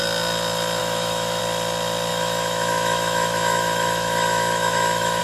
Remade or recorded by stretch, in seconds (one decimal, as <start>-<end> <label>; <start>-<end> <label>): 0.0-0.8 recorded; 0.8-1.4 remade; 1.4-2.1 recorded; 2.1-5.2 remade